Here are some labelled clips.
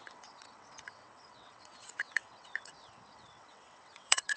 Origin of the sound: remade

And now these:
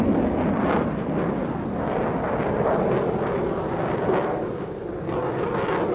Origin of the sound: recorded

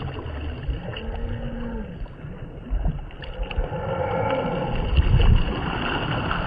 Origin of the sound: recorded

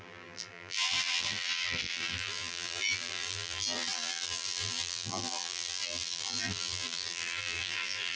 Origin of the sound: remade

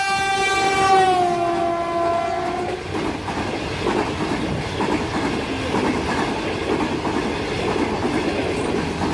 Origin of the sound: recorded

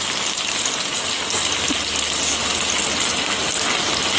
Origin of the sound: recorded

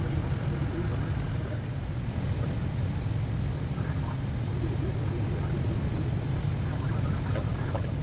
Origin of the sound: recorded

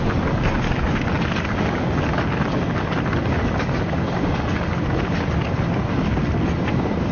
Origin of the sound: recorded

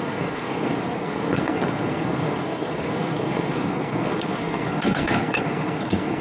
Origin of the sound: remade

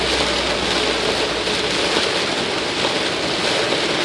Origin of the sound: recorded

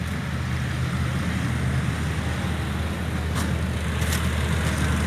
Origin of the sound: recorded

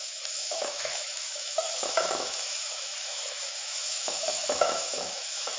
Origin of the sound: remade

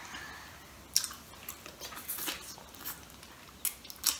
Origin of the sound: recorded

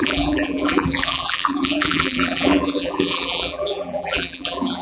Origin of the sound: remade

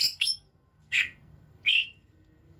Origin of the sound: remade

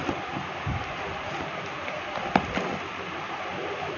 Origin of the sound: recorded